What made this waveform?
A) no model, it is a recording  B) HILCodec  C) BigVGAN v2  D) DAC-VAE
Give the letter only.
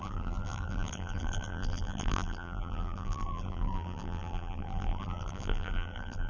C